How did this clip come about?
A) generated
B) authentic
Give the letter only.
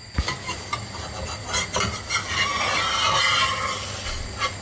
B